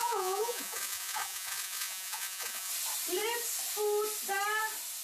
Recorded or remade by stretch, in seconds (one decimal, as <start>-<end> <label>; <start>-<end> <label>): 0.0-2.7 remade; 2.7-5.0 recorded